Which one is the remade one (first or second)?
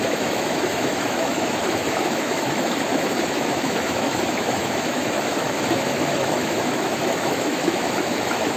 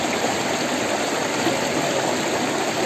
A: first